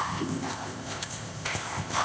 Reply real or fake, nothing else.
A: fake